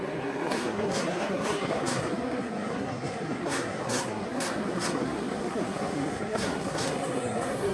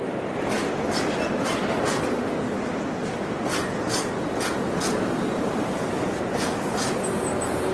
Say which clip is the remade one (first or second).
first